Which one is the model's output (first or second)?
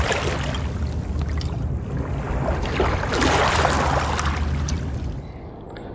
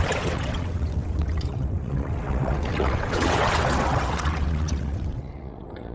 second